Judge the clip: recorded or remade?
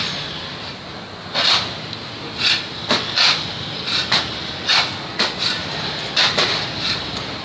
recorded